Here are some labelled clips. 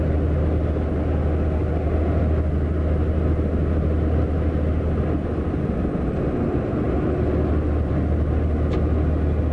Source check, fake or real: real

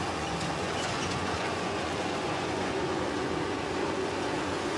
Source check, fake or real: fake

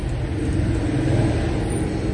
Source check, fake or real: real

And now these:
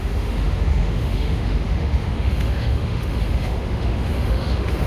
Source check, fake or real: fake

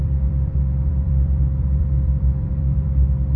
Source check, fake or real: fake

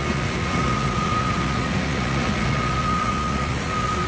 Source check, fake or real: fake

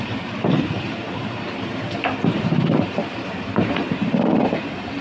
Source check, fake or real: fake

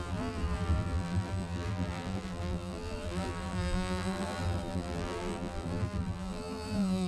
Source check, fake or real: fake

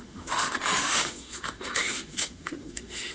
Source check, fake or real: fake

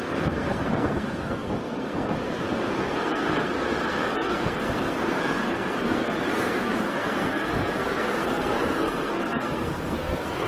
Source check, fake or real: fake